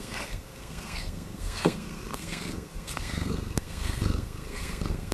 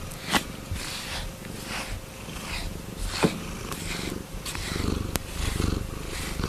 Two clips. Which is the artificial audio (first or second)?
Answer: first